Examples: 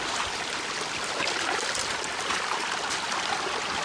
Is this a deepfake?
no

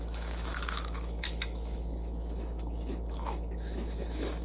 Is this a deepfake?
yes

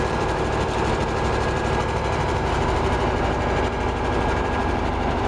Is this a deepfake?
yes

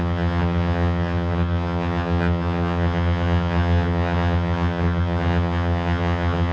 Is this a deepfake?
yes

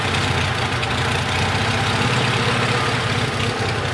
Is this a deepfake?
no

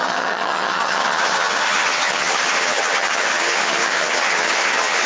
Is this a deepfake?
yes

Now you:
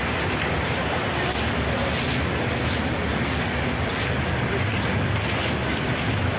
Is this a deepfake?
yes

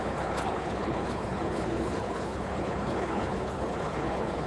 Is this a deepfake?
yes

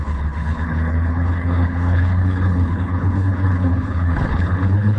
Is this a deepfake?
yes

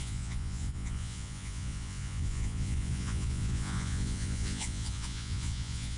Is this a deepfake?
yes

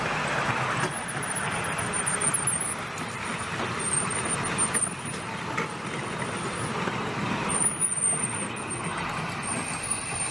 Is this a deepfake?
no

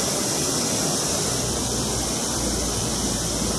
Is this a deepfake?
no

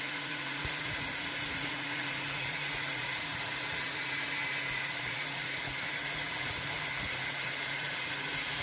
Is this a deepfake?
yes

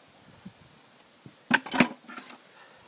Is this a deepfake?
no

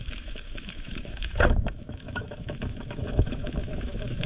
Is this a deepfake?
yes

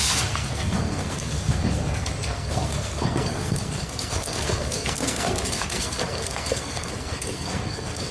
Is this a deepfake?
yes